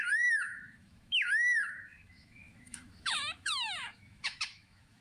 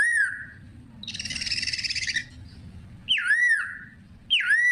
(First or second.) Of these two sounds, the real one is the second